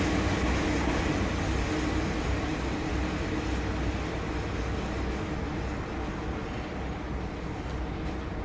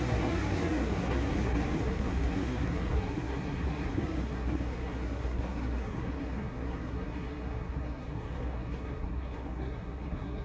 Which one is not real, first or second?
second